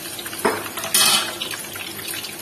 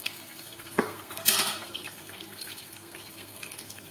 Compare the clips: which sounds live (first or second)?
first